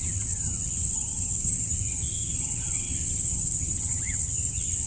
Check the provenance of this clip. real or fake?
fake